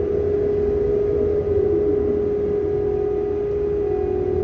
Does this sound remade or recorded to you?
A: recorded